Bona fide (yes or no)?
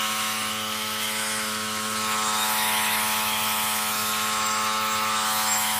no